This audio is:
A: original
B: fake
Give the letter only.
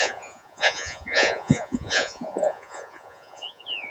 B